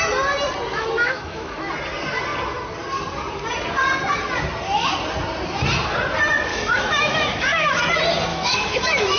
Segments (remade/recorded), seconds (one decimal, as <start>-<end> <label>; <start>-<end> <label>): 0.0-0.7 recorded; 0.7-1.7 remade; 1.7-6.5 recorded; 6.5-7.8 remade; 7.8-8.3 recorded; 8.3-9.2 remade